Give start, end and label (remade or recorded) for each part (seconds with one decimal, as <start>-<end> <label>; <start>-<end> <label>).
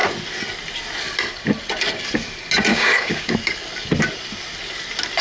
0.0-2.7 recorded; 2.7-3.3 remade; 3.3-5.2 recorded